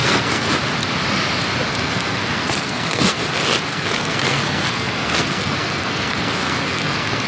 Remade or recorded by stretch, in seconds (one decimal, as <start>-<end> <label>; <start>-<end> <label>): 0.0-0.5 remade; 0.5-1.7 recorded; 1.7-3.2 remade; 3.2-3.7 recorded; 3.7-7.3 remade